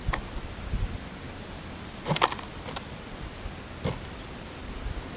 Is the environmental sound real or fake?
real